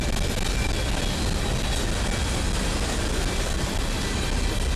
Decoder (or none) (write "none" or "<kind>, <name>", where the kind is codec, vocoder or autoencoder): none